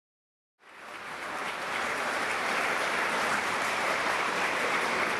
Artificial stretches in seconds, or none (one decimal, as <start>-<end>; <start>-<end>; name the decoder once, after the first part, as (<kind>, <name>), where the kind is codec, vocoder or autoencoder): 1.4-4.5 (vocoder, BigVGAN v2)